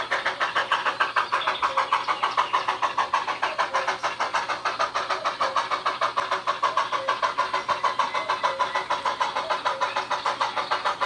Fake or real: real